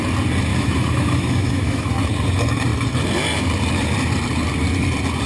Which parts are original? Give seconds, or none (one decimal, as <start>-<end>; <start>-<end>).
0.0-0.5; 1.9-5.3